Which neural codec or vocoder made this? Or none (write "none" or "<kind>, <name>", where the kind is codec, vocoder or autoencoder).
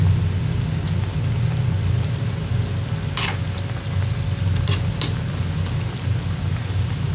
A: none